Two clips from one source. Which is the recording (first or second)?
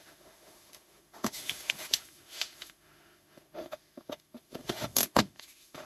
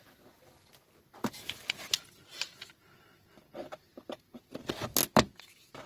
second